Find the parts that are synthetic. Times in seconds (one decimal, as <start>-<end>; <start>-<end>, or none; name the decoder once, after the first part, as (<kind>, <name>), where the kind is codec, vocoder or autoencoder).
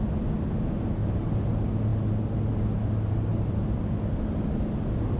1.0-1.5 (vocoder, BigVGAN v2)